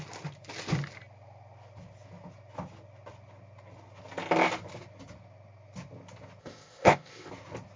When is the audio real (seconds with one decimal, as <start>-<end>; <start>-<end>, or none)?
0.0-6.4; 7.3-7.8